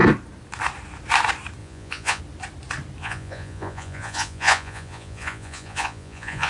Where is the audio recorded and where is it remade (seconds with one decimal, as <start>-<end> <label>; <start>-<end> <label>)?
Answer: 0.0-1.6 recorded; 1.6-2.2 remade; 2.2-3.0 recorded; 3.0-6.5 remade

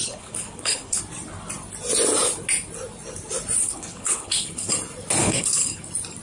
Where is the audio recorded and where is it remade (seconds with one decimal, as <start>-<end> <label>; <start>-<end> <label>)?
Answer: 0.0-1.0 remade; 1.0-3.6 recorded; 3.6-4.7 remade; 4.7-5.2 recorded; 5.2-5.8 remade; 5.8-6.2 recorded

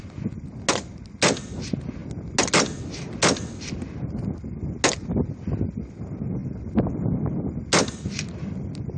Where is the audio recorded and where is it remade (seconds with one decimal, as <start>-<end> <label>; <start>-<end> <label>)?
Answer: 0.0-9.0 recorded

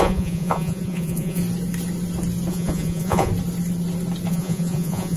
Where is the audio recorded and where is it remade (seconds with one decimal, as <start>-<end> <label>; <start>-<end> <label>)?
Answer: 0.0-1.4 remade; 1.4-2.5 recorded; 2.5-3.3 remade; 3.3-4.3 recorded; 4.3-5.2 remade

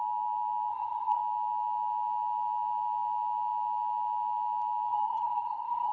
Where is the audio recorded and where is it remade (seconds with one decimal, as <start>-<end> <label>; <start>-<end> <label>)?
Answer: 0.0-0.7 recorded; 0.7-1.2 remade; 1.2-4.9 recorded; 4.9-5.9 remade